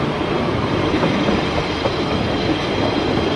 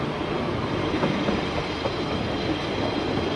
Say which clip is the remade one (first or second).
first